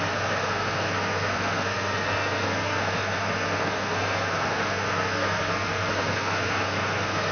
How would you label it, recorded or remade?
remade